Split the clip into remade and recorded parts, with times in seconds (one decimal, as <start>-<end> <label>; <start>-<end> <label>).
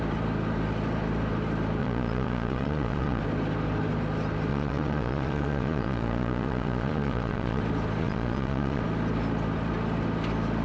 0.0-1.8 recorded; 1.8-3.2 remade; 3.2-4.5 recorded; 4.5-7.6 remade; 7.6-8.0 recorded; 8.0-8.8 remade; 8.8-10.6 recorded